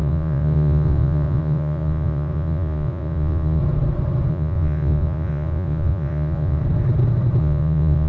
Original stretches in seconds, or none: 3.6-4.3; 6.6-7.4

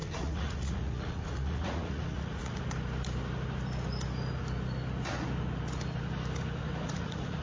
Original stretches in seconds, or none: 2.6-6.8

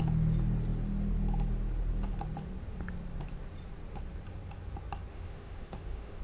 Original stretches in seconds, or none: 0.0-5.1

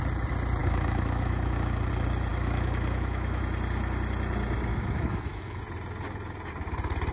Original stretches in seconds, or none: 0.0-0.6; 1.9-2.3; 3.4-4.7; 5.6-7.1